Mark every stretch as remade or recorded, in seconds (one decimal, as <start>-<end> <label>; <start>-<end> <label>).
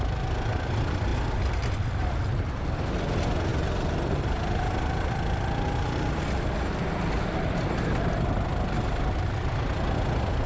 0.0-10.5 recorded